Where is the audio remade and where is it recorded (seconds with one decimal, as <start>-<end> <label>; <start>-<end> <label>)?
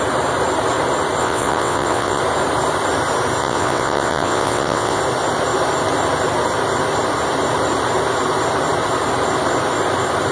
0.0-1.2 recorded; 1.2-2.2 remade; 2.2-3.4 recorded; 3.4-5.0 remade; 5.0-10.3 recorded